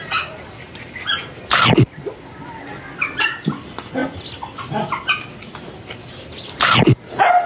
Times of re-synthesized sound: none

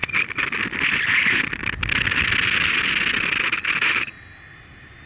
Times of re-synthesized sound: none